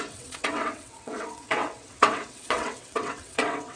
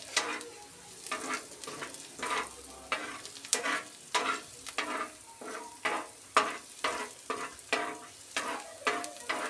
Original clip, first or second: second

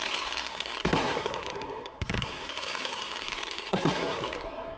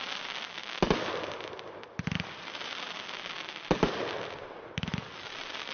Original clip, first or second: second